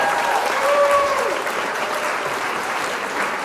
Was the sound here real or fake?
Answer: fake